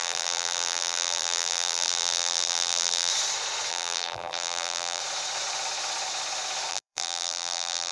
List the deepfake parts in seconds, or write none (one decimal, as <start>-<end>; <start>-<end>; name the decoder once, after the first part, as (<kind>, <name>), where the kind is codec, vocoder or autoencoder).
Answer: 0.0-3.1 (vocoder, BigVGAN v2); 3.7-5.0; 6.7-7.9